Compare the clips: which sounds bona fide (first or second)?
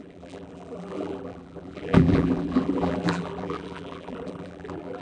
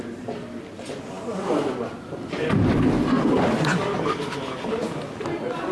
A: second